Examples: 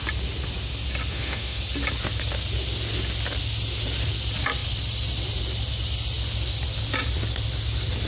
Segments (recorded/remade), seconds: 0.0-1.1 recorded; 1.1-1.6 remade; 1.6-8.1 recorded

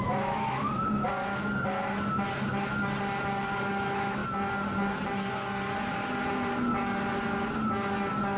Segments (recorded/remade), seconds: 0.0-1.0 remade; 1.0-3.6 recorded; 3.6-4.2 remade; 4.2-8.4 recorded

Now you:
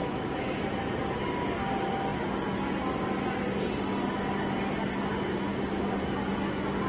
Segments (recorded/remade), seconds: 0.0-0.6 remade; 0.6-6.9 recorded

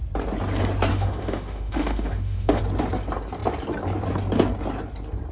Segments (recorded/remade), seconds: 0.0-0.9 recorded; 0.9-2.6 remade; 2.6-5.3 recorded

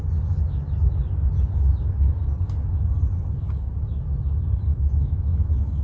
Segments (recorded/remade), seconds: 0.0-4.7 recorded; 4.7-5.8 remade

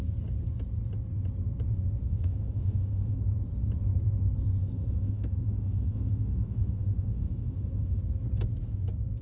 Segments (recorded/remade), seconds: 0.0-2.1 recorded; 2.1-3.2 remade; 3.2-4.6 recorded; 4.6-8.0 remade; 8.0-9.2 recorded

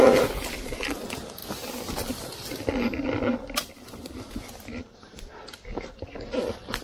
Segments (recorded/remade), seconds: 0.0-6.8 recorded